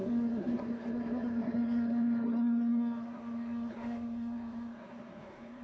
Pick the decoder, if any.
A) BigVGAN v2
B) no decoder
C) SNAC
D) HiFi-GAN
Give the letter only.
C